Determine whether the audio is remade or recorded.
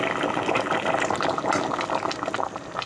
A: recorded